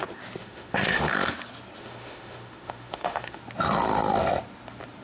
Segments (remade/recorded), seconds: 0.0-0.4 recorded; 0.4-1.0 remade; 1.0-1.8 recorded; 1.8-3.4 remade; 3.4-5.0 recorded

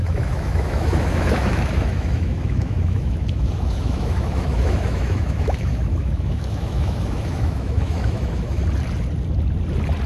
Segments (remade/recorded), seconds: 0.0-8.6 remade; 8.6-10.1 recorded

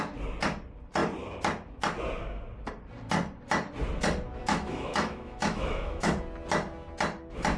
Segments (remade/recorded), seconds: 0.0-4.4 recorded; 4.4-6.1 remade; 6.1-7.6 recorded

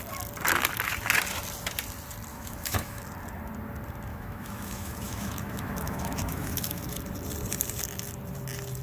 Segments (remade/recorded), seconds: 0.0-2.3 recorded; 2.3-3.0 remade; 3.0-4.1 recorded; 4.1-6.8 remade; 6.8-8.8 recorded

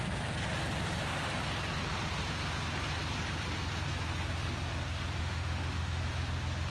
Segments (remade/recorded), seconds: 0.0-5.2 recorded; 5.2-6.0 remade; 6.0-6.7 recorded

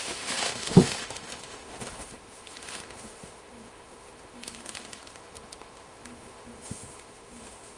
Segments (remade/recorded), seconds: 0.0-7.8 remade